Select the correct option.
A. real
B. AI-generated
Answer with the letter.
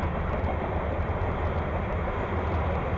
A